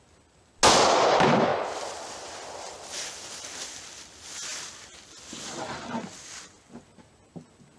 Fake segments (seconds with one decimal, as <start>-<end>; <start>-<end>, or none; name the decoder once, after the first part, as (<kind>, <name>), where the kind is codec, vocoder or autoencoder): none